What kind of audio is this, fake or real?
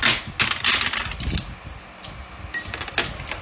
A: real